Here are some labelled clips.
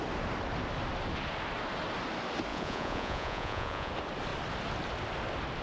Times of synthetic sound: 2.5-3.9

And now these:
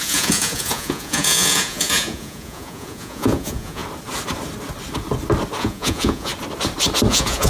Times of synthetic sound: 0.0-3.8; 5.6-6.3; 7.1-7.5

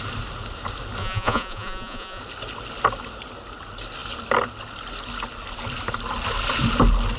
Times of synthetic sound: 1.0-2.2

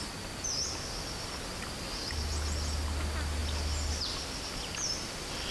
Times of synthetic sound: none

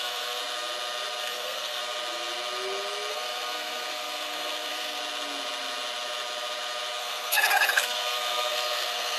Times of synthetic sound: 0.0-0.4; 1.2-1.8; 3.1-5.0; 7.0-9.2

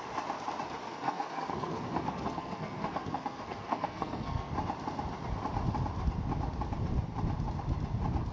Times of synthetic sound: 0.8-4.5